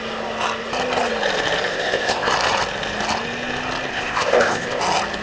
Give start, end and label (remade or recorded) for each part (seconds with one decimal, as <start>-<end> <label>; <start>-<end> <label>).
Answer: 0.0-1.7 recorded; 1.7-2.3 remade; 2.3-3.9 recorded; 3.9-4.8 remade; 4.8-5.2 recorded